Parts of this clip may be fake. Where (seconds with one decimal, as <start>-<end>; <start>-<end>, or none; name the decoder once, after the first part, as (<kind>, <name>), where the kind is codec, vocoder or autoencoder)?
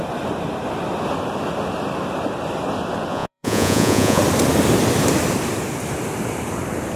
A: 3.1-4.2 (vocoder, Vocos)